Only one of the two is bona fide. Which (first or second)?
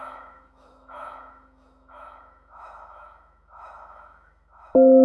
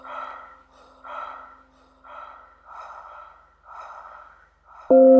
second